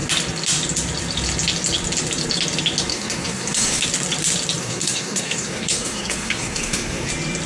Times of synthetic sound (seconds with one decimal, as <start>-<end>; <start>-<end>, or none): 2.9-3.8; 4.6-7.1